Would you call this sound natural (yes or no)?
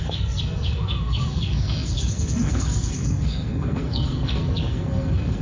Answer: no